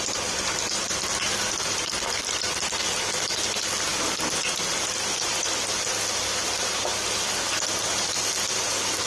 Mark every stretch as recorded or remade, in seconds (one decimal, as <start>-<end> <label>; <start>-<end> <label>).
0.0-9.1 recorded